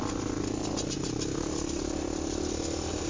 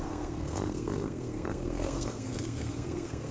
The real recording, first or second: first